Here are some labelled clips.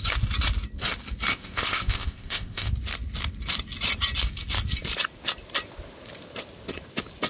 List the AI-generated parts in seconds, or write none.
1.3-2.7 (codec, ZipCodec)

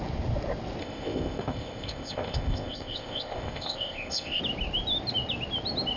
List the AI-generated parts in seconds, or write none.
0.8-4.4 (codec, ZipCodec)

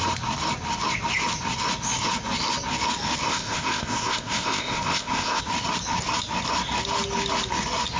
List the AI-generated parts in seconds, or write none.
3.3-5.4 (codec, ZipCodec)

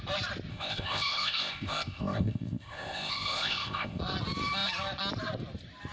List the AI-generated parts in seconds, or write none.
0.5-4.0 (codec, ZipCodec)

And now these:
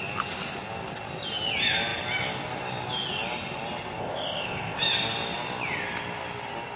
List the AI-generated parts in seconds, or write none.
4.0-4.8 (codec, ZipCodec)

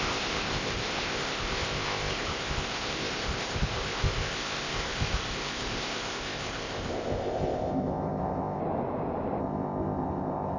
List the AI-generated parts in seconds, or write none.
0.0-8.6 (codec, ZipCodec); 9.4-10.6

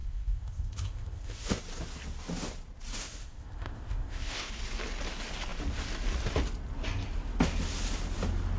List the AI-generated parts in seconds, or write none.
0.0-1.6 (codec, ZipCodec); 3.0-4.5